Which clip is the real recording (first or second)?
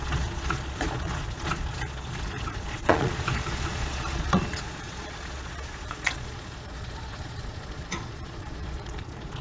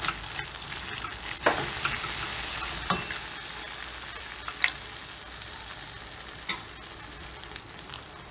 second